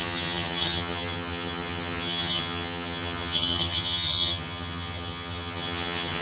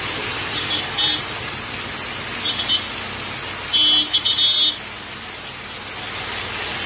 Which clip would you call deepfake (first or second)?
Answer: first